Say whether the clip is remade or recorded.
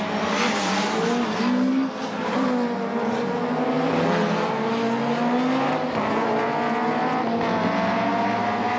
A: recorded